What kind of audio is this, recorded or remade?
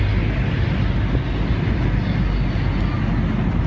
recorded